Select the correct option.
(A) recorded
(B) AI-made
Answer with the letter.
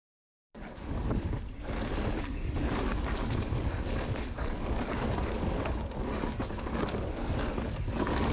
B